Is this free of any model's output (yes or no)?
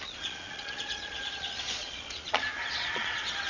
no